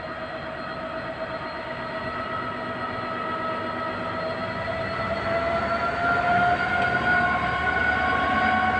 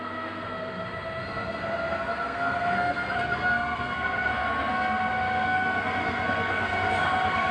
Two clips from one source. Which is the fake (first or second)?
second